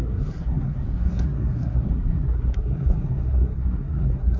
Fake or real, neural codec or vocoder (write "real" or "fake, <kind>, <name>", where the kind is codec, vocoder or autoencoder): fake, codec, SNAC